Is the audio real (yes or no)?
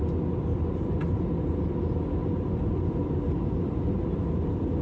yes